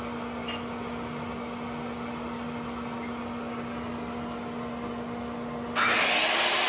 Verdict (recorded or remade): recorded